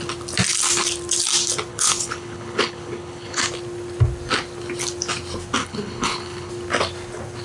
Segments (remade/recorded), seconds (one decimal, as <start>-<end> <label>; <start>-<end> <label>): 0.0-1.7 recorded; 1.7-3.4 remade; 3.4-5.6 recorded; 5.6-6.5 remade; 6.5-7.4 recorded